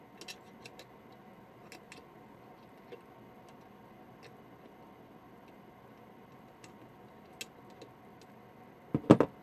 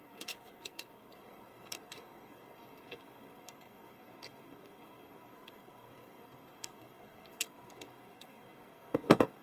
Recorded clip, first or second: first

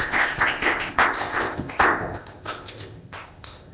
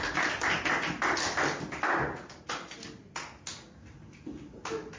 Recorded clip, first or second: second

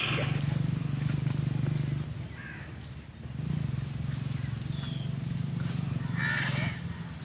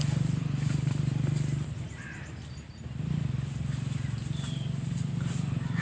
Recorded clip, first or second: first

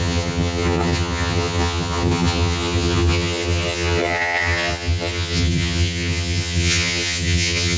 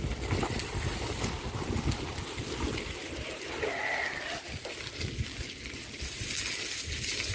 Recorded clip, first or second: second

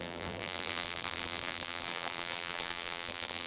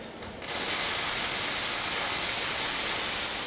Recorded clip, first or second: second